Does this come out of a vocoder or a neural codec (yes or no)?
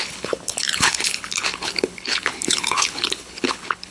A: yes